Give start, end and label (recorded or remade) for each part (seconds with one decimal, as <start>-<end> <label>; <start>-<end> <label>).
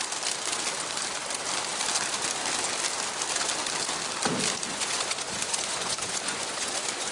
0.0-4.7 recorded; 4.7-7.1 remade